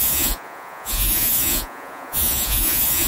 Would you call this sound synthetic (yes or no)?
yes